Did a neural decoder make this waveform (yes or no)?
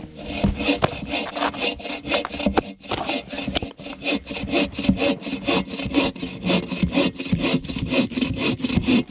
no